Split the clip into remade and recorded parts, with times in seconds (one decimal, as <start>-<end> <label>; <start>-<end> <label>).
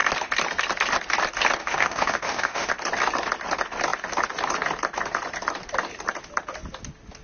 0.0-1.6 recorded; 1.6-2.7 remade; 2.7-7.2 recorded